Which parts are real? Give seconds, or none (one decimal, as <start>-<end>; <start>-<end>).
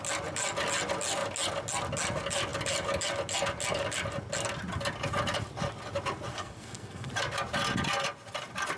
0.0-6.3; 7.1-8.8